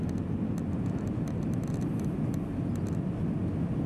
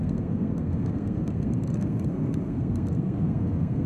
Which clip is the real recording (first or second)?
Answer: first